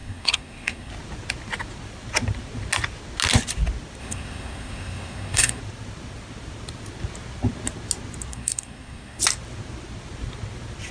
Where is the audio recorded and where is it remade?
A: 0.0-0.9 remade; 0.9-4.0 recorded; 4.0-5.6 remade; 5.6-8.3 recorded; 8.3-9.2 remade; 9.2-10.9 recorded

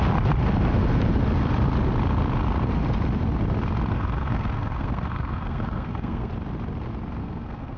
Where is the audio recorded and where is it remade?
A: 0.0-3.9 recorded; 3.9-6.3 remade; 6.3-7.2 recorded; 7.2-7.8 remade